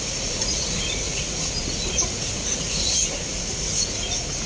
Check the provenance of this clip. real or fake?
fake